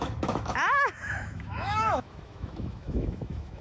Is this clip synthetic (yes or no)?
yes